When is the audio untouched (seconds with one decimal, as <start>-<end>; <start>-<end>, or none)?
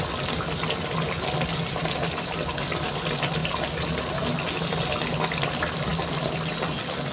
0.0-7.1